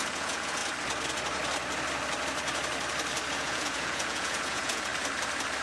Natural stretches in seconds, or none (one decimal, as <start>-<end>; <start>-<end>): 0.6-3.4; 4.9-5.6